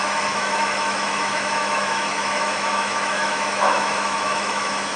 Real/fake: fake